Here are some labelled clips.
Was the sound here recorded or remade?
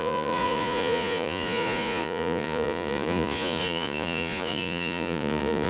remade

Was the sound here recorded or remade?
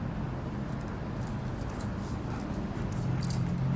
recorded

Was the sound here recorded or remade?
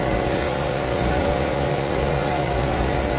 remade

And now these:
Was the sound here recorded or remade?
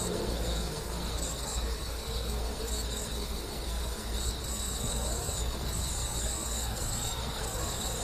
remade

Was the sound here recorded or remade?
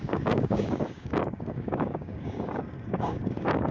remade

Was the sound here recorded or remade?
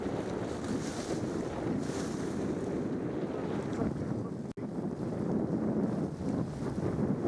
recorded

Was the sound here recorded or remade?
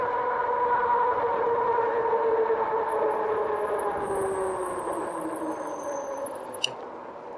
recorded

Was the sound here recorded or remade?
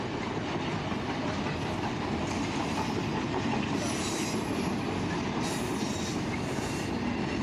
recorded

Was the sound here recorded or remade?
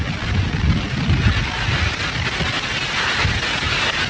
recorded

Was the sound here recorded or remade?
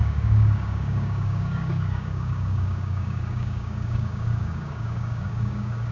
remade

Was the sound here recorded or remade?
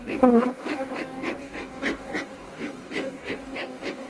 remade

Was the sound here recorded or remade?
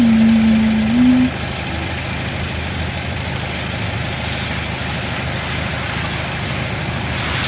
recorded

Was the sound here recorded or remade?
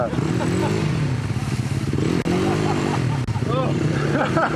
recorded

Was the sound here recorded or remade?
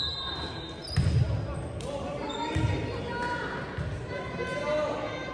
recorded